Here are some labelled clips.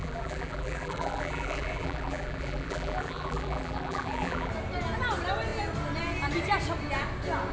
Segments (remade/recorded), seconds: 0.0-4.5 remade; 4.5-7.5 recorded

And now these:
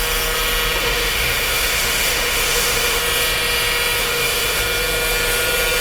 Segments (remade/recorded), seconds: 0.0-0.8 recorded; 0.8-3.0 remade; 3.0-4.0 recorded; 4.0-4.6 remade; 4.6-5.8 recorded

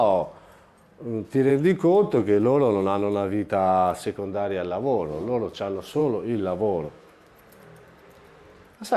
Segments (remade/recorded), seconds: 0.0-1.5 recorded; 1.5-3.5 remade; 3.5-6.0 recorded; 6.0-7.3 remade; 7.3-9.0 recorded

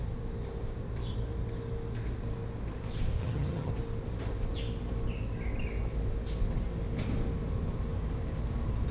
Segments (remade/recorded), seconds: 0.0-3.2 recorded; 3.2-3.7 remade; 3.7-8.9 recorded